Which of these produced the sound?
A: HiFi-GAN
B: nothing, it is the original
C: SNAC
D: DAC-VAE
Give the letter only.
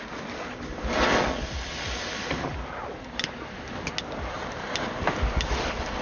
B